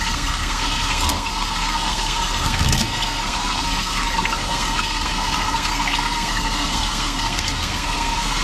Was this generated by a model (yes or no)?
yes